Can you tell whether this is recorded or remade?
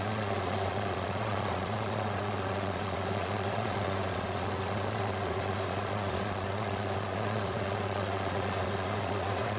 remade